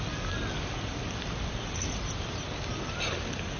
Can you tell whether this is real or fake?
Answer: real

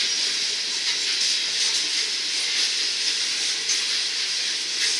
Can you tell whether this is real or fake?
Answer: real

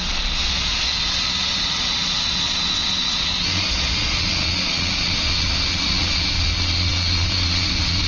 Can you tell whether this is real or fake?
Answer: fake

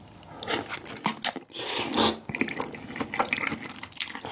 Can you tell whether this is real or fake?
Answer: real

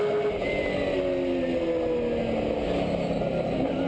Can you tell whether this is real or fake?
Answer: real